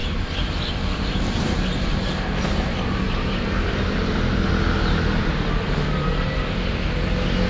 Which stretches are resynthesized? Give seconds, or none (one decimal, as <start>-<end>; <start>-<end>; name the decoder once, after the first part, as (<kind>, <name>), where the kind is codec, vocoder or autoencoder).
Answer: 0.0-4.5 (vocoder, BigVGAN v2)